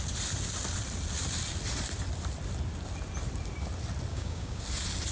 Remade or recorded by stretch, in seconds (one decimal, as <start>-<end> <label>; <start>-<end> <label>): 0.0-4.1 recorded; 4.1-4.6 remade; 4.6-5.1 recorded